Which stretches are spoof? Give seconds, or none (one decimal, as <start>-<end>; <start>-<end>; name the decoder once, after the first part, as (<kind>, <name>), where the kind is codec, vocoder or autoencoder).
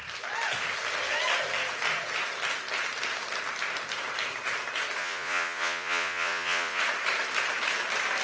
5.0-6.8 (vocoder, Vocos)